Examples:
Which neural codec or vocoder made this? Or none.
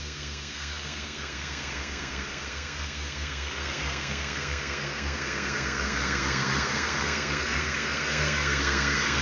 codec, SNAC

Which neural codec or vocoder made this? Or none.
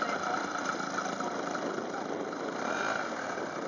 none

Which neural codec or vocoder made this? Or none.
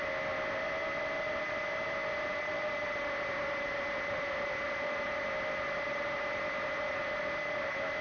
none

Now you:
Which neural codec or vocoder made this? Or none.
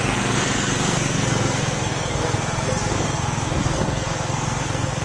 codec, SNAC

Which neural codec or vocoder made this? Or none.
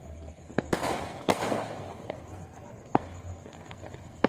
codec, SNAC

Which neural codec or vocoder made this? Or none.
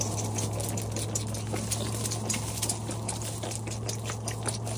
none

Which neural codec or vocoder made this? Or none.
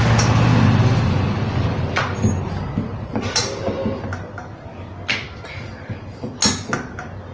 none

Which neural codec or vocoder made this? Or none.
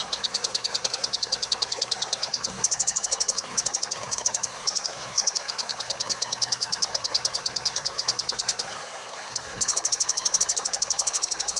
codec, SNAC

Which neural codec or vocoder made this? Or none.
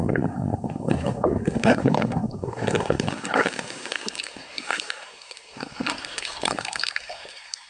codec, SNAC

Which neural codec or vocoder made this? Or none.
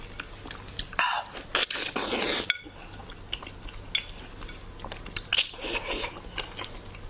none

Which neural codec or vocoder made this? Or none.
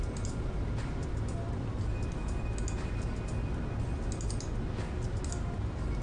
none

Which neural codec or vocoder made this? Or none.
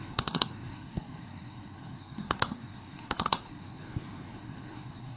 codec, SNAC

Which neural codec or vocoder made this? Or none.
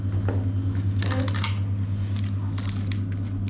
none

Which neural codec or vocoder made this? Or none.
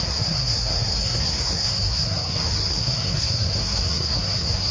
codec, SNAC